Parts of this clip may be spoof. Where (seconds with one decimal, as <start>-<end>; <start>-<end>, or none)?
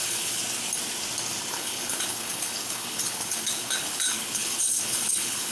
0.0-0.4; 1.5-5.5